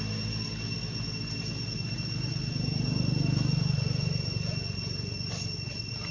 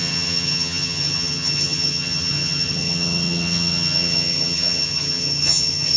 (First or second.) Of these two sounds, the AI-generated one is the second